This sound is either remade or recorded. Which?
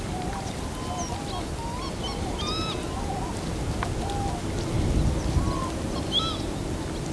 recorded